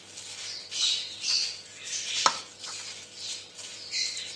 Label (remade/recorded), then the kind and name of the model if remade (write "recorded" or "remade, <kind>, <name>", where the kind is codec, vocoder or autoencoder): recorded